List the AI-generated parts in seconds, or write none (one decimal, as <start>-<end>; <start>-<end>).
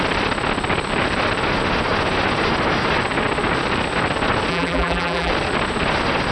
4.5-5.3